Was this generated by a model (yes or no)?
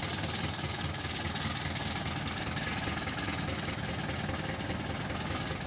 no